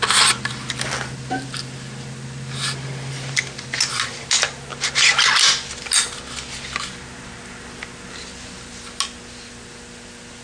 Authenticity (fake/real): real